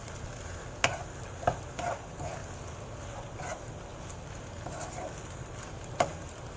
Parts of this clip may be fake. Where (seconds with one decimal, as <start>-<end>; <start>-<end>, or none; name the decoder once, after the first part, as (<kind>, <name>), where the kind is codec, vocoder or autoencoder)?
none